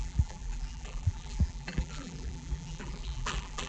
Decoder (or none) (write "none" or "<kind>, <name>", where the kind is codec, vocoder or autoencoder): vocoder, BigVGAN v2